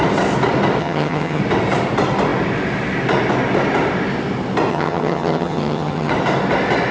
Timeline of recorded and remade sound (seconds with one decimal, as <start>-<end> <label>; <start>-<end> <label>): 0.0-0.8 recorded; 0.8-1.4 remade; 1.4-4.7 recorded; 4.7-6.1 remade; 6.1-6.9 recorded